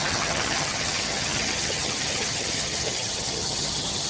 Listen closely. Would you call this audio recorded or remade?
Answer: remade